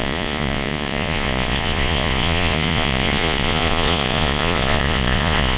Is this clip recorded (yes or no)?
no